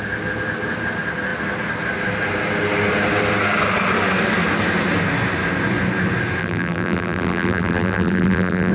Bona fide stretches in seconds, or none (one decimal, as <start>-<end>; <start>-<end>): 0.0-6.4